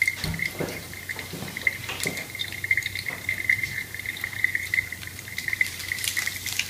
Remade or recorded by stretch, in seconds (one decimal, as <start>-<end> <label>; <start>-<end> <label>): 0.0-0.4 recorded; 0.4-1.0 remade; 1.0-1.8 recorded; 1.8-5.8 remade; 5.8-6.7 recorded